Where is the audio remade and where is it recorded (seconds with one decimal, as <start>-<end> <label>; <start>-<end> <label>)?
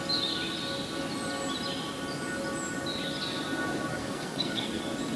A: 0.0-3.9 recorded; 3.9-4.8 remade; 4.8-5.2 recorded